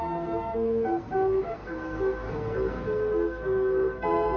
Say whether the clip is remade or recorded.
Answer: remade